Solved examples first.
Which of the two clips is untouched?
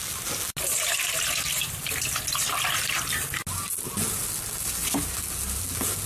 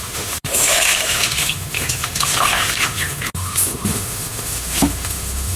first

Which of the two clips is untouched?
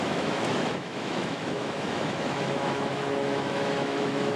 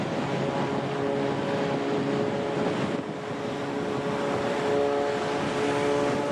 second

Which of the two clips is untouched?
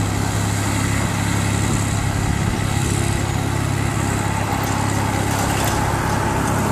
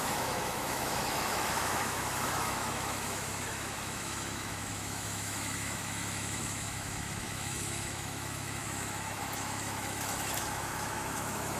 first